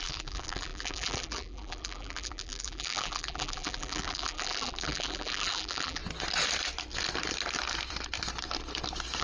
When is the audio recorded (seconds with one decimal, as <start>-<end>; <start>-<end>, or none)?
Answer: 6.0-9.2